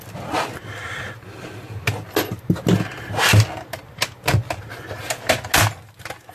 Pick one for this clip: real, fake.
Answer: real